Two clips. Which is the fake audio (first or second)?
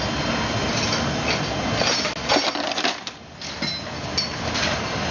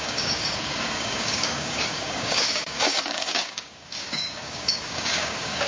second